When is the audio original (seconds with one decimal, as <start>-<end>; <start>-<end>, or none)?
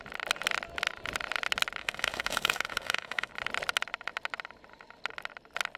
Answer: 0.0-1.8; 3.3-5.8